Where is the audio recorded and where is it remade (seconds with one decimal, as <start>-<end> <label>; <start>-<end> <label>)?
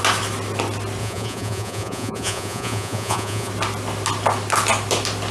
0.0-1.0 recorded; 1.0-3.5 remade; 3.5-5.3 recorded